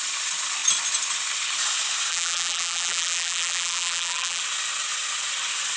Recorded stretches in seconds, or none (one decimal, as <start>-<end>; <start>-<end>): 0.0-2.1; 4.4-5.8